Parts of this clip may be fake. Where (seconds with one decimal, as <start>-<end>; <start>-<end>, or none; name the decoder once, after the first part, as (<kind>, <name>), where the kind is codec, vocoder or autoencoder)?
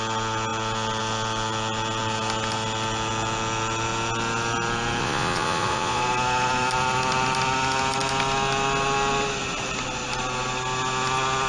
5.0-6.0 (vocoder, Vocos)